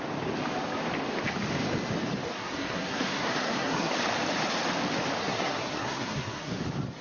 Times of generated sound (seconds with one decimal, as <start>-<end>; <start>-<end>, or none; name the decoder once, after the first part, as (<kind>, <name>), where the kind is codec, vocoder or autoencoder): 2.3-3.9 (codec, SNAC); 5.2-6.6